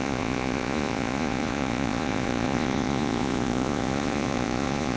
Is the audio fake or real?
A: fake